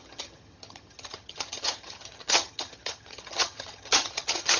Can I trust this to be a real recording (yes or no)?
no